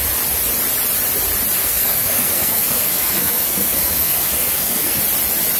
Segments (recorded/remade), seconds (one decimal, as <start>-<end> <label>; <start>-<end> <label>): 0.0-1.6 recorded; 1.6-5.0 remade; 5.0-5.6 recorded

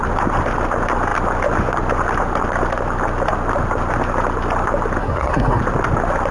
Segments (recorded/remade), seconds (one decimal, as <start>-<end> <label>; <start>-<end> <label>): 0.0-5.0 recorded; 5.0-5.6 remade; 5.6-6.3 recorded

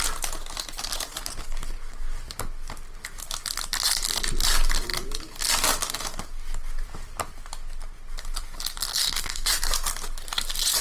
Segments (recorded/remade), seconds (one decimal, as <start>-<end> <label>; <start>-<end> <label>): 0.0-9.0 recorded; 9.0-9.5 remade; 9.5-10.8 recorded

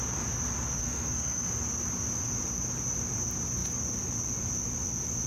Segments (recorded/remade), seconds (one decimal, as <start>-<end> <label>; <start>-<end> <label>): 0.0-0.8 recorded; 0.8-1.5 remade; 1.5-5.3 recorded

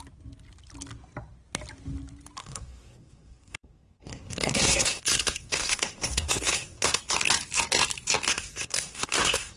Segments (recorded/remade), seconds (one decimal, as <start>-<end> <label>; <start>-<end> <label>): 0.0-2.4 recorded; 2.4-7.0 remade; 7.0-8.3 recorded; 8.3-9.6 remade

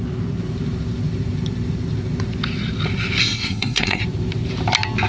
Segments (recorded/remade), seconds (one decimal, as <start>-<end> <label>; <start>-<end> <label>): 0.0-3.2 recorded; 3.2-4.0 remade; 4.0-5.1 recorded

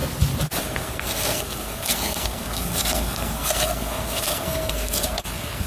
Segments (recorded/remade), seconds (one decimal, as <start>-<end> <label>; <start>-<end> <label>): 0.0-0.6 recorded; 0.6-5.7 remade